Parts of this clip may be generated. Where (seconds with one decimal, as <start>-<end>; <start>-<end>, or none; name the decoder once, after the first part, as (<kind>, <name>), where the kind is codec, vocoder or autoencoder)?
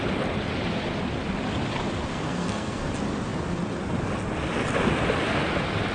2.1-2.9 (codec, SNAC)